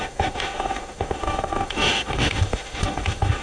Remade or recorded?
remade